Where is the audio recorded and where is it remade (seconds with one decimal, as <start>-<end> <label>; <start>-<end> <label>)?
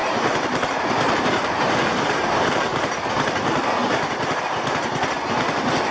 0.0-3.1 remade; 3.1-5.9 recorded